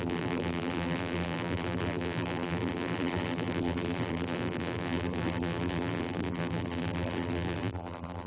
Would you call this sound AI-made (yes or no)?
yes